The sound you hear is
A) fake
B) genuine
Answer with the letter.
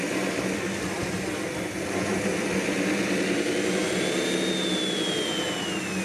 B